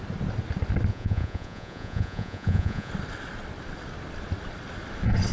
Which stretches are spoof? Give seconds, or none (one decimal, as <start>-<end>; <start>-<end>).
0.9-2.9